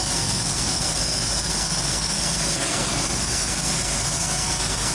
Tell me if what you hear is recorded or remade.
remade